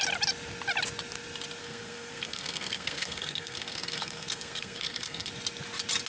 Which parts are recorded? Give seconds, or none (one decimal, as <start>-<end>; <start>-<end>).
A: 0.0-1.6; 5.3-6.1